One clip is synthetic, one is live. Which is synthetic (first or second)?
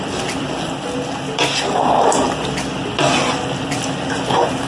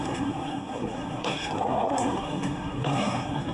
second